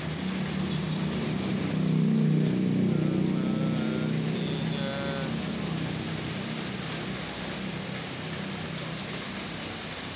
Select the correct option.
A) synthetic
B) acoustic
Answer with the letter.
B